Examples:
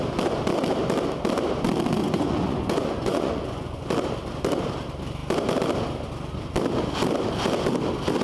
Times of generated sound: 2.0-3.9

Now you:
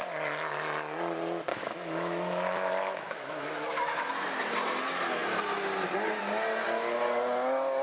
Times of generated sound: 1.5-4.1

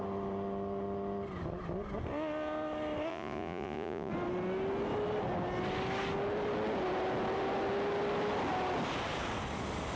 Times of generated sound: 3.1-4.1

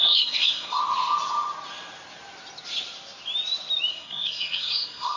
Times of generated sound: 0.0-0.8; 3.9-5.2